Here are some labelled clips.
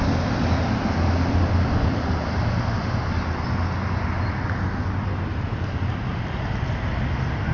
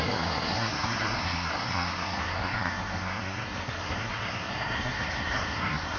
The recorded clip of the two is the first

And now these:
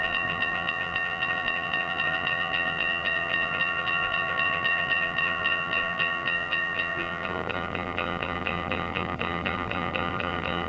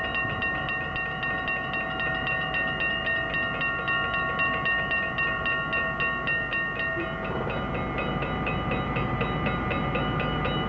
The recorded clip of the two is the second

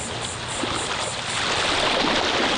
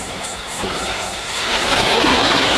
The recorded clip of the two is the first